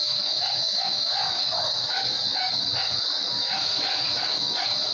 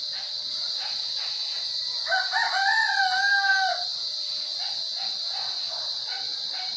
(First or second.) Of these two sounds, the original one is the second